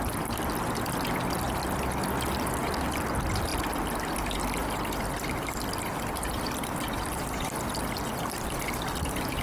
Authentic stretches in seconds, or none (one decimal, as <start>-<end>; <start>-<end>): 0.0-4.6; 7.6-9.4